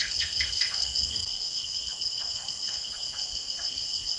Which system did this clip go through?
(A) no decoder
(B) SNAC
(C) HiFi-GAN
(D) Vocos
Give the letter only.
B